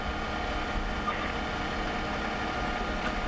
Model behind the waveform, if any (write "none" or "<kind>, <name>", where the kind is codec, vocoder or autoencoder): none